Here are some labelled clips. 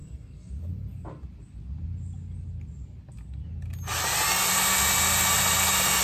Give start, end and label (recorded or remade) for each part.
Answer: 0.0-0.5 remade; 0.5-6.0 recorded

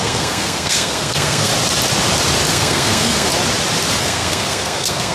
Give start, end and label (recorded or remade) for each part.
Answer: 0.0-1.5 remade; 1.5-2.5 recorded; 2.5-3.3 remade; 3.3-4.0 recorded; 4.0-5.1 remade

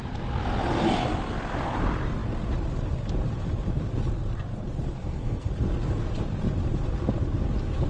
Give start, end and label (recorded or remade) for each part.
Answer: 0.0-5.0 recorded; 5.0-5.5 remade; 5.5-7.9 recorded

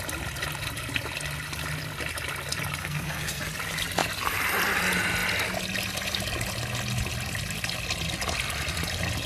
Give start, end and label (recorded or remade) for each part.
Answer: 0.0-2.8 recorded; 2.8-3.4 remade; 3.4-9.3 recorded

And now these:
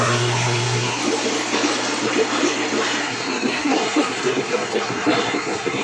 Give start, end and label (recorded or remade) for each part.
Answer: 0.0-1.0 remade; 1.0-3.0 recorded; 3.0-5.8 remade